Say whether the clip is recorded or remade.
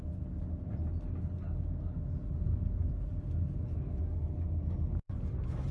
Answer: recorded